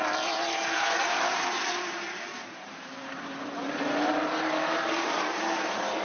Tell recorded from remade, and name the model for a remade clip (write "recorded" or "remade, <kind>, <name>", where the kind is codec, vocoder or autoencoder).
remade, vocoder, BigVGAN v2